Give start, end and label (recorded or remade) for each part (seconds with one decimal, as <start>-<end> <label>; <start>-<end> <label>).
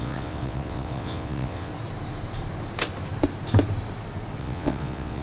0.0-1.7 remade; 1.7-4.4 recorded; 4.4-5.2 remade